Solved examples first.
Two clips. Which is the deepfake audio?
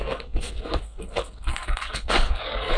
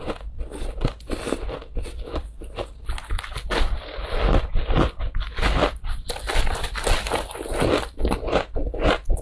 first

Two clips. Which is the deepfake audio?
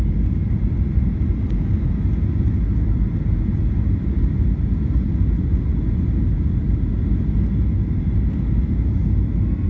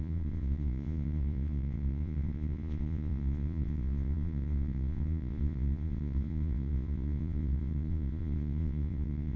second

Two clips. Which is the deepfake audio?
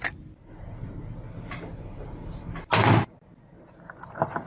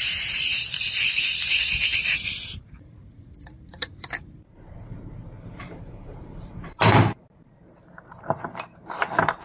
second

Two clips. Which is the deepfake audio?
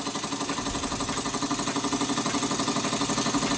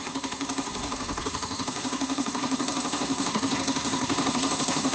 second